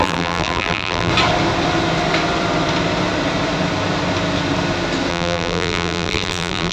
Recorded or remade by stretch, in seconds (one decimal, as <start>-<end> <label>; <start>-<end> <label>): 0.0-1.1 remade; 1.1-5.1 recorded; 5.1-6.7 remade